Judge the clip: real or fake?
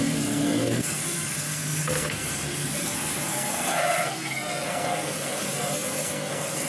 fake